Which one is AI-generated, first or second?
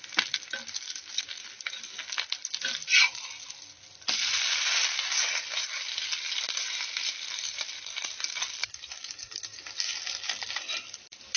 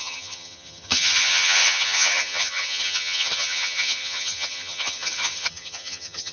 second